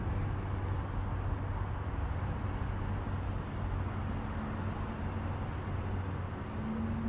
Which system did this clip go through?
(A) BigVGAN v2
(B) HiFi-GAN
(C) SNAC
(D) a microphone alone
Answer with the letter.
D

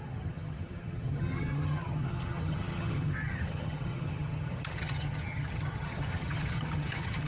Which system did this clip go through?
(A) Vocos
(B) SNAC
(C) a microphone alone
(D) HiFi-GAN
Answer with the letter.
D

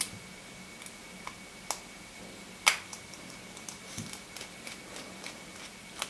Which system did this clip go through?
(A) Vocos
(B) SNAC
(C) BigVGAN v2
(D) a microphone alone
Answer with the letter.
D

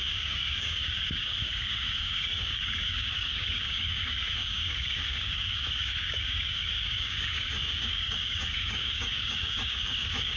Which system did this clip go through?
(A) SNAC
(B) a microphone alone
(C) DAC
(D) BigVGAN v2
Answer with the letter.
C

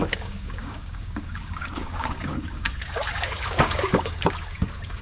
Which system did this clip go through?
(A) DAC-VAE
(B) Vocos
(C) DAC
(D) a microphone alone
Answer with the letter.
C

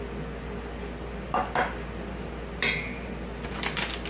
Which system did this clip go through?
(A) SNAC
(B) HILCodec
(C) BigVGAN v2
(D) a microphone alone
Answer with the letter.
D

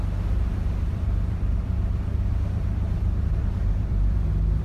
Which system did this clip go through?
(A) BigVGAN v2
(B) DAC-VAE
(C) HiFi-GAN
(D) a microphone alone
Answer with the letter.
A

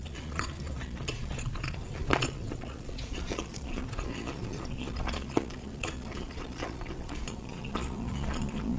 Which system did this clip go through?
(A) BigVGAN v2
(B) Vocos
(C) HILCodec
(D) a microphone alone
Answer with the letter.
B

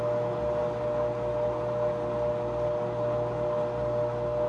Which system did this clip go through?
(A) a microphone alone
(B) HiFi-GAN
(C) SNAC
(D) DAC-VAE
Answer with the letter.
A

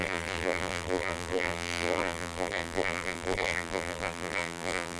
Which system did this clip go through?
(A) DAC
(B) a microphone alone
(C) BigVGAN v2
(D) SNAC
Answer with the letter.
C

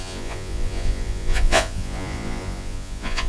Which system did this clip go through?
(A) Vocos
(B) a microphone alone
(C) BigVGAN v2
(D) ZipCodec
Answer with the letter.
A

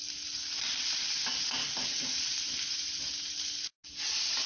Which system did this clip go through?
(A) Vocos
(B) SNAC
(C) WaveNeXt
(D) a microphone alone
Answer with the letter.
D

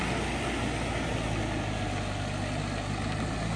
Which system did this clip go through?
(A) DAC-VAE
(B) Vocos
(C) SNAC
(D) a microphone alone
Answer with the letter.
D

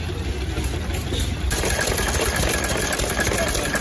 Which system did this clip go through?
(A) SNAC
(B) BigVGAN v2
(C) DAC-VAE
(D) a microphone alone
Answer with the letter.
D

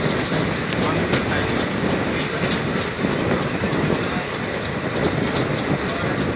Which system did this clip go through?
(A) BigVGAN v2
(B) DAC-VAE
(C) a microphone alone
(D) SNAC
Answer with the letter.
C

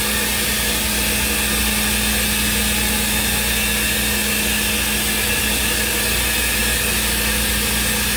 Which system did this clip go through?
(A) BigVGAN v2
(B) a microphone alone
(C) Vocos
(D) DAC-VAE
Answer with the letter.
B